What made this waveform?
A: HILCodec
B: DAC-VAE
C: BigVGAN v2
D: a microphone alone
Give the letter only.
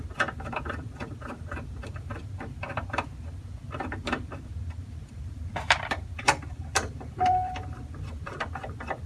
C